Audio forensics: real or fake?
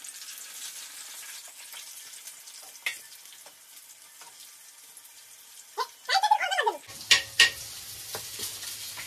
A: real